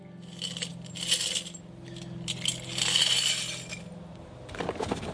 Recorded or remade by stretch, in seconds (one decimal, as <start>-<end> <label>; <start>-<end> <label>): 0.0-5.1 recorded